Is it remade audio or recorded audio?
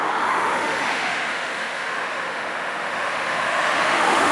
remade